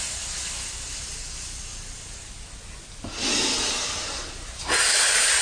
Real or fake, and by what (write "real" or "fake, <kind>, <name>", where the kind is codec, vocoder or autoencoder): real